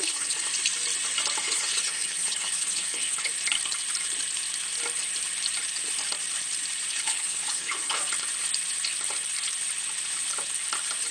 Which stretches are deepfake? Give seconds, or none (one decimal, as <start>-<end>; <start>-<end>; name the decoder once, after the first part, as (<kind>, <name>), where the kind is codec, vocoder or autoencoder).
0.0-0.5 (codec, HILCodec); 1.4-3.3; 6.9-8.0